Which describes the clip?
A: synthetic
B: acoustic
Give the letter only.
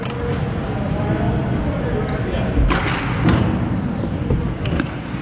B